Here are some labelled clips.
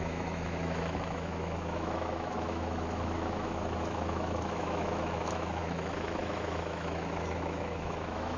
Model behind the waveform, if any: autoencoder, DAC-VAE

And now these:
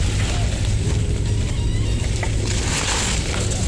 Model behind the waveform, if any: none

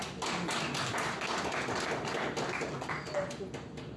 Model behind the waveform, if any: none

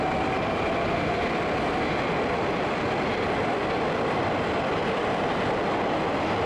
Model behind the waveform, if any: none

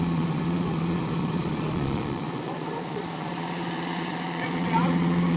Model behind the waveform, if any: vocoder, Vocos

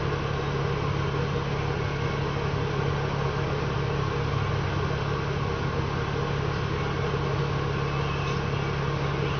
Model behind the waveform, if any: none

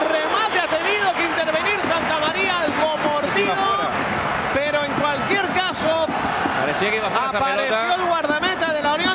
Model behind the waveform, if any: none